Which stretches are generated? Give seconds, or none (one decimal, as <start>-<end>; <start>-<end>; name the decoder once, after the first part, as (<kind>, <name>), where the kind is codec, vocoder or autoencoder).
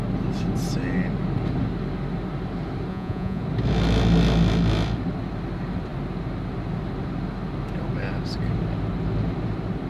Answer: 2.9-3.4 (vocoder, Vocos)